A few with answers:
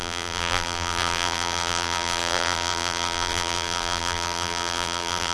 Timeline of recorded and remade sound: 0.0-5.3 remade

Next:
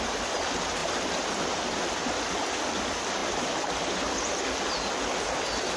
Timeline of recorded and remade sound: 0.0-5.8 recorded

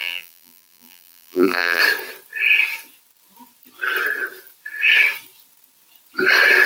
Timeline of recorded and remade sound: 0.0-1.8 remade; 1.8-6.7 recorded

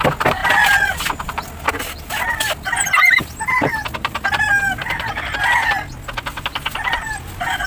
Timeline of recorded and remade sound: 0.0-7.7 recorded

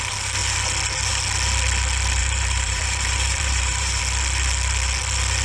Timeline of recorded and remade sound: 0.0-2.2 recorded; 2.2-4.0 remade; 4.0-5.4 recorded

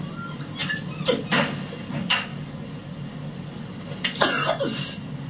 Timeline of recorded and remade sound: 0.0-5.3 recorded

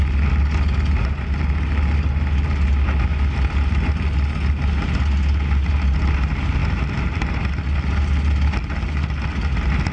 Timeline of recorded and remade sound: 0.0-9.9 recorded

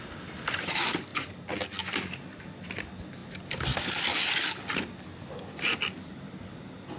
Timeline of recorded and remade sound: 0.0-7.0 recorded